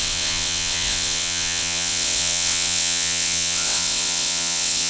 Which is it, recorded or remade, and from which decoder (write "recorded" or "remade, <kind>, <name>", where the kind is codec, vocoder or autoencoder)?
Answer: remade, vocoder, WaveNeXt